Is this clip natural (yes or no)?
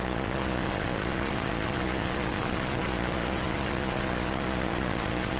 no